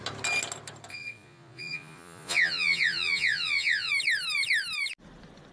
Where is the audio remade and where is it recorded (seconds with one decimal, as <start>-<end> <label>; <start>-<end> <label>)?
0.0-0.9 recorded; 0.9-3.9 remade; 3.9-5.5 recorded